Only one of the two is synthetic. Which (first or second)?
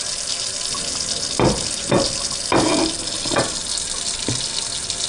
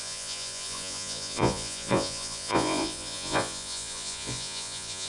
second